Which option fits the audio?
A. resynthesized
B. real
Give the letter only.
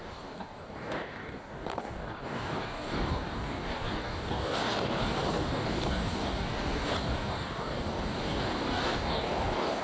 A